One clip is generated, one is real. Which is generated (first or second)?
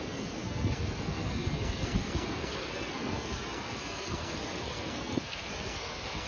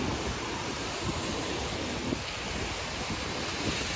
first